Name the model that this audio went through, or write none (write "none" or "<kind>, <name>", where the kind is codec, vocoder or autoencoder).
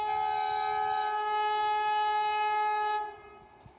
none